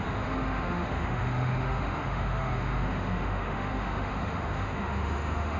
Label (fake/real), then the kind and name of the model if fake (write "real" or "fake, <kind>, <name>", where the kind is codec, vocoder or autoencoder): fake, autoencoder, DAC-VAE